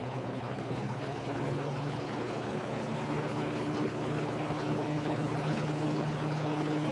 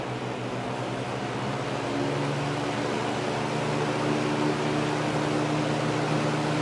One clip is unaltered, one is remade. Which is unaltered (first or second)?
second